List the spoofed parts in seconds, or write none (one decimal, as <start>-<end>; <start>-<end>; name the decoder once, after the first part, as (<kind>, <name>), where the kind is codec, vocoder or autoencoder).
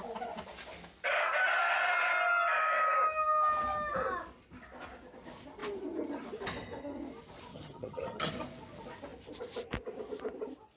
7.5-8.3 (vocoder, HiFi-GAN)